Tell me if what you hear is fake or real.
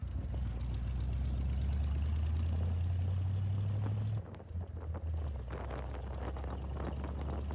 real